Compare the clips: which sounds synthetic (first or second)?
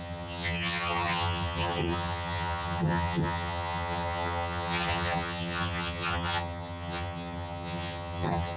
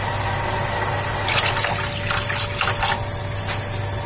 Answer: first